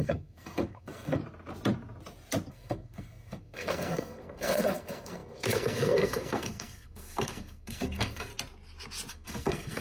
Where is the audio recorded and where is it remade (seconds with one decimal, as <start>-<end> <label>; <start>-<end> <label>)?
0.0-1.2 remade; 1.2-2.5 recorded; 2.5-8.3 remade; 8.3-9.1 recorded; 9.1-9.8 remade